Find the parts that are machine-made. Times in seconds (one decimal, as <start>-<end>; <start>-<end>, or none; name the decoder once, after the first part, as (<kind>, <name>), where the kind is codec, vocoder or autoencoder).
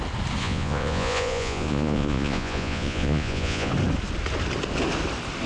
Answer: 0.4-3.7 (vocoder, Vocos)